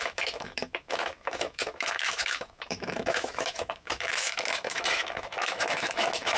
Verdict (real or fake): fake